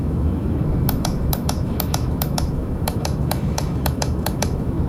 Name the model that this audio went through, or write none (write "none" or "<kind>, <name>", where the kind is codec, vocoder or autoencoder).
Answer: autoencoder, DAC-VAE